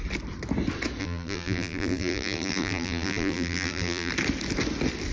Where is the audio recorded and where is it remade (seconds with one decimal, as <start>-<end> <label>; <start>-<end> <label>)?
0.0-1.0 recorded; 1.0-4.1 remade; 4.1-5.1 recorded